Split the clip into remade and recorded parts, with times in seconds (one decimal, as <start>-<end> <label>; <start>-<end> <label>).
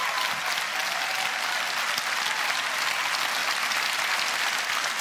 0.0-5.0 recorded